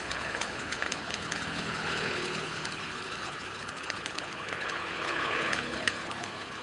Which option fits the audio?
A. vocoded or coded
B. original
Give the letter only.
A